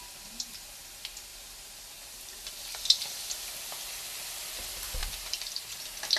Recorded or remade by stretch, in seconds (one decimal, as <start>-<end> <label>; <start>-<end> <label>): 0.0-1.3 recorded; 1.3-2.1 remade; 2.1-5.0 recorded; 5.0-5.7 remade; 5.7-6.2 recorded